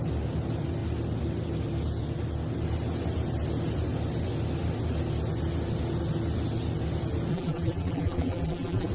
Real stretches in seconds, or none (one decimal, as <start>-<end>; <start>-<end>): 0.0-7.3